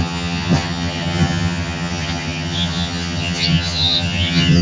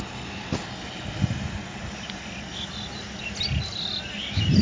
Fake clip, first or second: first